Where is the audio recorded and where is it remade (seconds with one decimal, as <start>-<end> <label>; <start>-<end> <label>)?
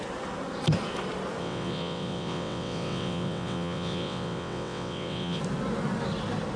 0.0-1.4 recorded; 1.4-5.4 remade; 5.4-6.6 recorded